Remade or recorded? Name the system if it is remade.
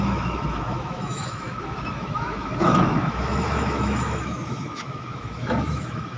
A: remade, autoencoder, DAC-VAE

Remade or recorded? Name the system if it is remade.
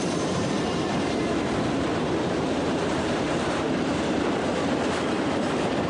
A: remade, vocoder, BigVGAN v2